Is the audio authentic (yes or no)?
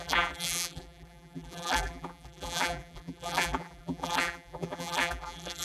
no